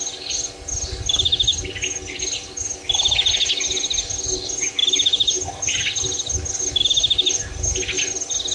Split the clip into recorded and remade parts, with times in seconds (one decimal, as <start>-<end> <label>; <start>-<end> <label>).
0.0-8.5 recorded